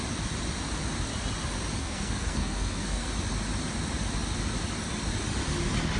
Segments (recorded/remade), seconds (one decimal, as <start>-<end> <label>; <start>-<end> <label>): 0.0-1.8 recorded; 1.8-3.1 remade; 3.1-6.0 recorded